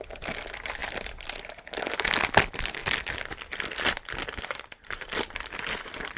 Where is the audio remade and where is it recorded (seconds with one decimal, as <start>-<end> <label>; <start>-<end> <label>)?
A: 0.0-6.2 remade